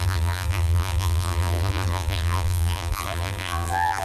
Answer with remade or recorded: remade